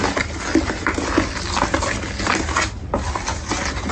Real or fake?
real